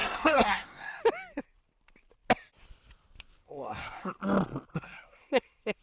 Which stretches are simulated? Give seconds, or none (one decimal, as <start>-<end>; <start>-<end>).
0.0-1.0; 3.4-4.2; 4.7-5.8